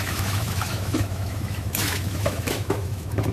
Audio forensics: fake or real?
fake